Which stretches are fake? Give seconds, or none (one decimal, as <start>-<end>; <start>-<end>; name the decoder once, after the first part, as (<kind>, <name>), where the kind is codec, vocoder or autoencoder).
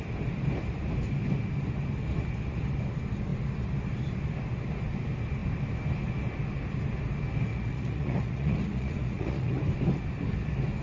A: 7.5-9.6 (vocoder, Vocos)